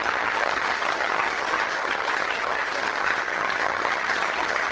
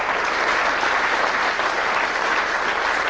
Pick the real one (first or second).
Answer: second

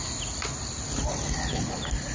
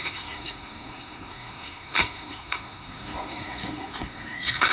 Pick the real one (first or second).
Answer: first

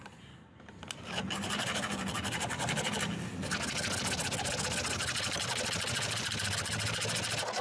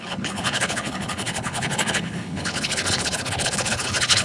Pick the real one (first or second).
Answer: first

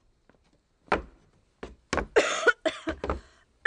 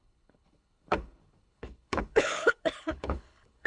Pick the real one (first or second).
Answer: first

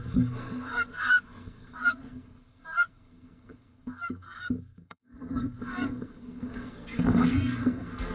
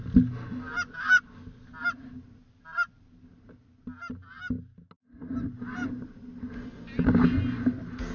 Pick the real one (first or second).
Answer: second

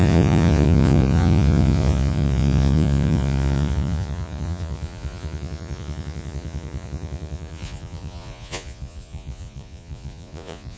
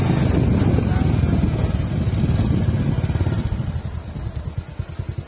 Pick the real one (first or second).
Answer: second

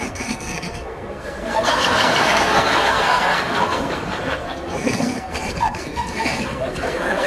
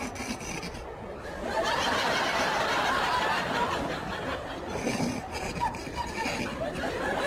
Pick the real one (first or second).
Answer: second